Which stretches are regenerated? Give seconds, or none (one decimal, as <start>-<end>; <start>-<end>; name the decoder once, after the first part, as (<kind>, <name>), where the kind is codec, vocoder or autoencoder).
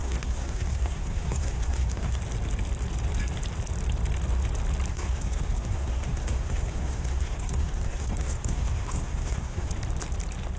0.0-2.2 (codec, SNAC); 4.9-9.7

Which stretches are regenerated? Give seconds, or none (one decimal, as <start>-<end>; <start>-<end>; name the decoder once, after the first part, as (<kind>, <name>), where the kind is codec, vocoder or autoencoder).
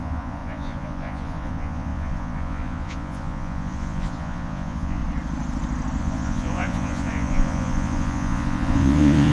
0.0-5.0 (vocoder, Vocos); 6.0-9.3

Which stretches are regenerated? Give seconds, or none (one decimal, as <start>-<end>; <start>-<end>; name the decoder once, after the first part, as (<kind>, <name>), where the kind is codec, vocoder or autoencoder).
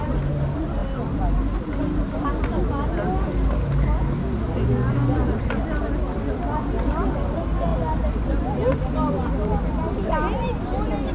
none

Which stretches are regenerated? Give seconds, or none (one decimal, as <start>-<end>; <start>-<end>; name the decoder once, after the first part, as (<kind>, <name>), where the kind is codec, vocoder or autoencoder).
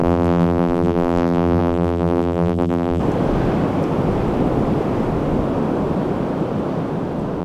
0.0-3.0 (vocoder, BigVGAN v2)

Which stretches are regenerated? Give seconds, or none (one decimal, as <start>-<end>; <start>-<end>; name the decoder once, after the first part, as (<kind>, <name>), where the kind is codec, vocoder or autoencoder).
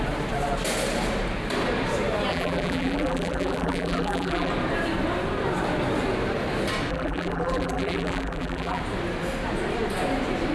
2.3-4.5 (vocoder, BigVGAN v2); 6.9-8.8